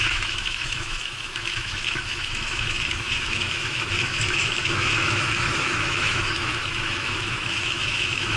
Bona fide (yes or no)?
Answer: no